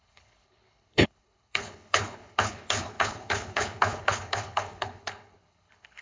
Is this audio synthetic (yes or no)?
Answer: yes